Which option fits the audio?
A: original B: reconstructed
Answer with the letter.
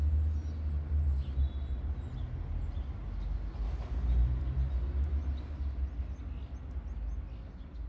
A